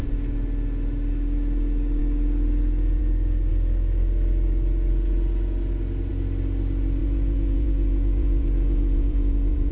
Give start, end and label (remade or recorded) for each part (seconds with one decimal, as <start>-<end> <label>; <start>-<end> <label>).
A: 0.0-7.0 recorded; 7.0-9.7 remade

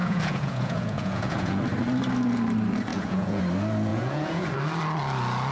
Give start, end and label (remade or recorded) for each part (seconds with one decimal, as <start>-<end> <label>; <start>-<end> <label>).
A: 0.0-1.6 remade; 1.6-2.9 recorded; 2.9-3.4 remade; 3.4-3.9 recorded; 3.9-4.5 remade; 4.5-5.5 recorded

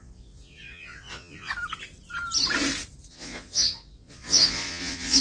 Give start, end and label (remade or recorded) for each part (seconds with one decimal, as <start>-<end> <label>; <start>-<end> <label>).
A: 0.0-1.5 remade; 1.5-3.1 recorded; 3.1-5.2 remade

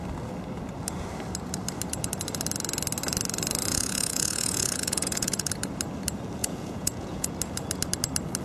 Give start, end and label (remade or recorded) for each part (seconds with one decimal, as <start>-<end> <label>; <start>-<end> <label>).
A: 0.0-3.7 recorded; 3.7-5.5 remade; 5.5-6.4 recorded; 6.4-7.3 remade; 7.3-8.4 recorded